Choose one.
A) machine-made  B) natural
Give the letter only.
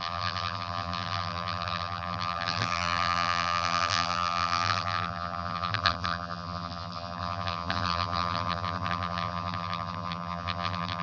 A